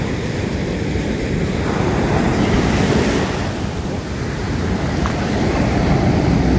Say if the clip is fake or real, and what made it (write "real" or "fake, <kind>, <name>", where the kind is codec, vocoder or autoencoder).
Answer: fake, vocoder, BigVGAN v2